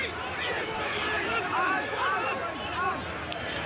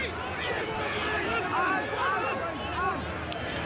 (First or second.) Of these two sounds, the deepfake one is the first